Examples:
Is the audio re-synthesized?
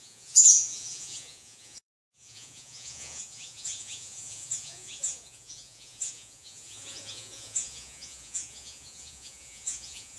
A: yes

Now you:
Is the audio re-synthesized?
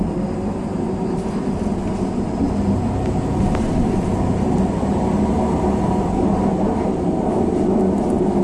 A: no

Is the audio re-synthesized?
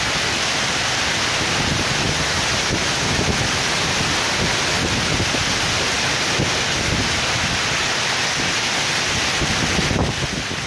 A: no